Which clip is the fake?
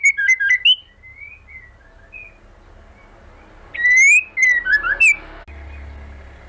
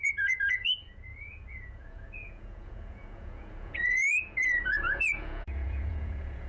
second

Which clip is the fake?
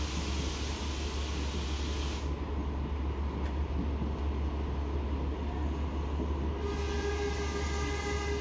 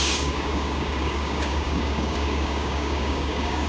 second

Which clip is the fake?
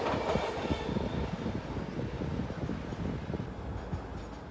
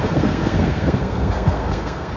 second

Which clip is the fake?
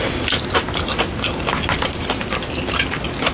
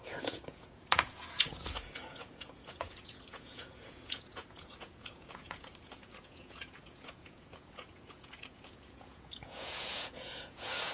second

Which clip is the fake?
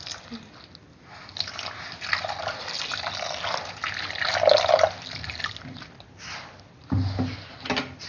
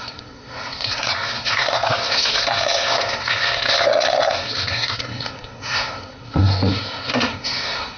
second